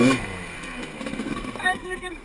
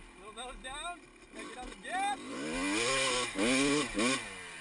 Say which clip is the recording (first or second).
second